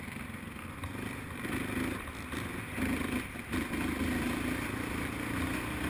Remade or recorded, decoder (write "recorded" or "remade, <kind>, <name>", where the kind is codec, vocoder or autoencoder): recorded